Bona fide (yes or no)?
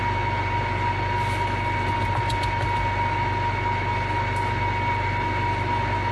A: yes